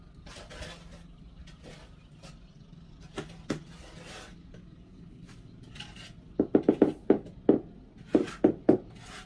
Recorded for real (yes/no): yes